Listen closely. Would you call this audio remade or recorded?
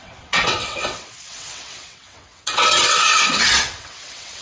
remade